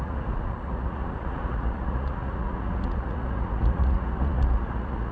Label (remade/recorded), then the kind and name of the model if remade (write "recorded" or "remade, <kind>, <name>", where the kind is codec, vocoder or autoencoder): remade, vocoder, Vocos